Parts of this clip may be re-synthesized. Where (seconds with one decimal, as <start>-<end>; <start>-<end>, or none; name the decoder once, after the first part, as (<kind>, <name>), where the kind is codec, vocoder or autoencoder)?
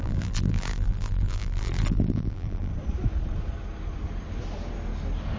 0.0-2.7 (vocoder, BigVGAN v2)